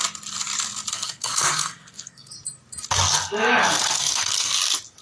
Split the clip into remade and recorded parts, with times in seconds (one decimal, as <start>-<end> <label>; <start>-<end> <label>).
0.0-0.9 recorded; 0.9-2.3 remade; 2.3-3.6 recorded; 3.6-4.5 remade; 4.5-5.0 recorded